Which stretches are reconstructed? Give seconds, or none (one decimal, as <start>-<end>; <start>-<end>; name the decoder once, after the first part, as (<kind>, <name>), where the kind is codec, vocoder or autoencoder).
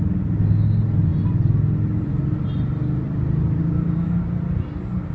3.6-4.2 (codec, DAC)